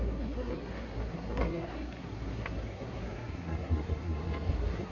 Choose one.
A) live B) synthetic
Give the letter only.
B